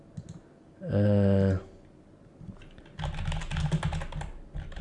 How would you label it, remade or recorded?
recorded